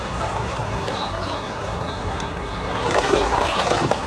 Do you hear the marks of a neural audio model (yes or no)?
yes